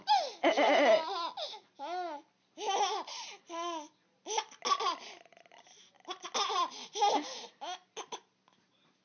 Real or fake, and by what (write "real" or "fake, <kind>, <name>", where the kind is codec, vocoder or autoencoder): real